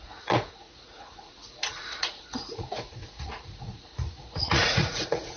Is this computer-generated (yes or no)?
yes